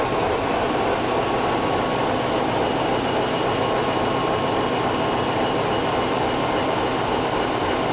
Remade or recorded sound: recorded